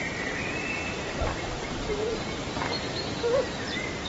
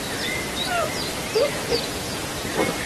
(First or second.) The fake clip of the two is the first